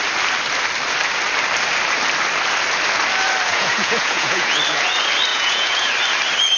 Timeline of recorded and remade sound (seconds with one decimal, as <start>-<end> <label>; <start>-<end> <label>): 0.0-3.5 recorded; 3.5-4.6 remade; 4.6-5.3 recorded; 5.3-5.9 remade; 5.9-6.6 recorded

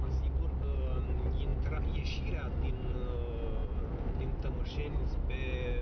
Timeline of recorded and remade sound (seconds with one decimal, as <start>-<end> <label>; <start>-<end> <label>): 0.0-5.8 recorded

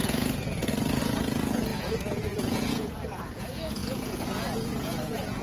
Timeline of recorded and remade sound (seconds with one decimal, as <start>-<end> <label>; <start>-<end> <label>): 0.0-5.4 remade

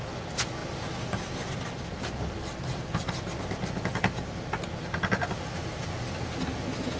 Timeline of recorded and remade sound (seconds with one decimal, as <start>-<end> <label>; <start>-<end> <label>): 0.0-7.0 recorded